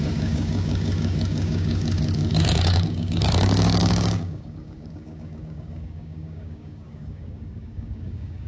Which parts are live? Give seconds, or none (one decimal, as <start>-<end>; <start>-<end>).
none